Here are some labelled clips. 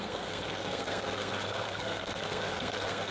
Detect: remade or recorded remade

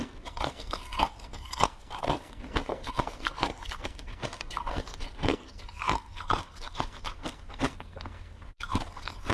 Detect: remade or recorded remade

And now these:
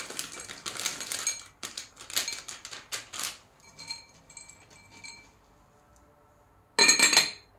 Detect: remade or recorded recorded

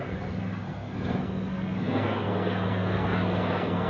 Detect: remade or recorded remade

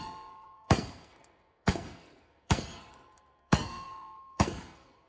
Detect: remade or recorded remade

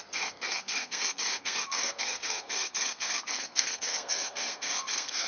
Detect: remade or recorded remade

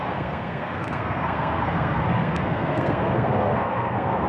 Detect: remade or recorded remade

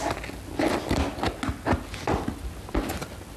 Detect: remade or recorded recorded